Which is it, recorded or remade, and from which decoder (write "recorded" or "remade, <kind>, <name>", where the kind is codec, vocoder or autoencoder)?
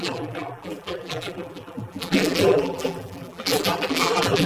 remade, vocoder, BigVGAN v2